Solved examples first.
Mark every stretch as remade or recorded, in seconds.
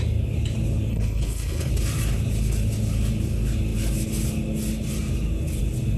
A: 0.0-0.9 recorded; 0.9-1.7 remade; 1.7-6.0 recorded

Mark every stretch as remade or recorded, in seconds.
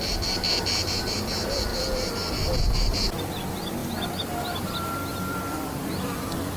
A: 0.0-6.6 remade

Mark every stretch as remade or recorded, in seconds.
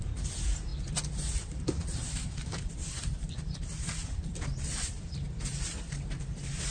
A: 0.0-6.7 remade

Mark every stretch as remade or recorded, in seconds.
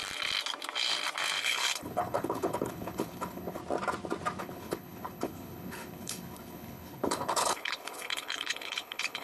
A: 0.0-1.4 recorded; 1.4-3.6 remade; 3.6-4.4 recorded; 4.4-9.2 remade